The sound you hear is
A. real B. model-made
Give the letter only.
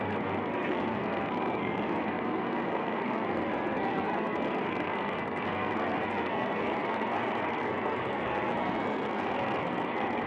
B